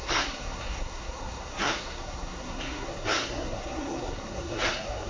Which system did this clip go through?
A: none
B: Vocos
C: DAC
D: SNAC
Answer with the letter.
D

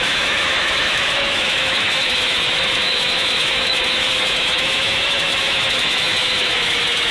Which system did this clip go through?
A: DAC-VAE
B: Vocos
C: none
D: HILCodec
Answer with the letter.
A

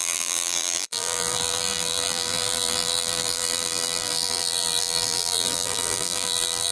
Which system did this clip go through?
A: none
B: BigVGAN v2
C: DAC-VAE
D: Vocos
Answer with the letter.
B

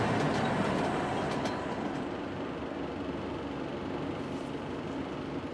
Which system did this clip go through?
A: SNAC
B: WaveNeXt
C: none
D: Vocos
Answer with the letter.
C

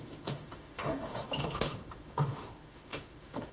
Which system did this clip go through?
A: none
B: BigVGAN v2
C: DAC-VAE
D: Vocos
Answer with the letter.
C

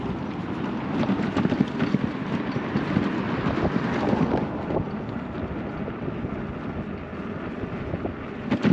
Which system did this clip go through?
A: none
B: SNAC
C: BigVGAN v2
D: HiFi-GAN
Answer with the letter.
A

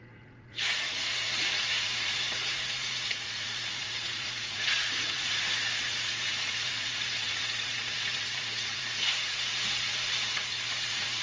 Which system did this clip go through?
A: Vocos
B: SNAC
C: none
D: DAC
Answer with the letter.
A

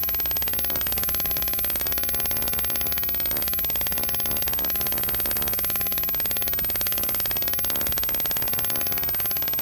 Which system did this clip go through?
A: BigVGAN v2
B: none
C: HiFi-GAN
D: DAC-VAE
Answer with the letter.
B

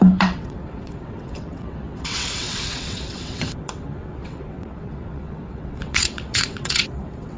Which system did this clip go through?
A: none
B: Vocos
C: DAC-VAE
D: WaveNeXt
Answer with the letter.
D